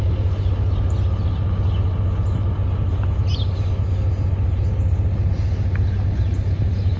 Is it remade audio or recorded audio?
recorded